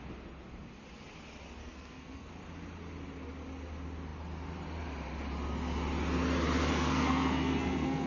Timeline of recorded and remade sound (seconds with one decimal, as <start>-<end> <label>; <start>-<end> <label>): 0.0-1.6 recorded; 1.6-2.3 remade; 2.3-6.7 recorded; 6.7-8.1 remade